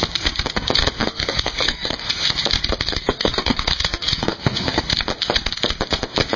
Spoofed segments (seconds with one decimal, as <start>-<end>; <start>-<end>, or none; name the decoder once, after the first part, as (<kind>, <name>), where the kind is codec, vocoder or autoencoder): 1.0-2.1 (codec, SNAC); 2.9-4.8